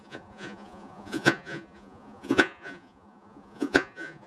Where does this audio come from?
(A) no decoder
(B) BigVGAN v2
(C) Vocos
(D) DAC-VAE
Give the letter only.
C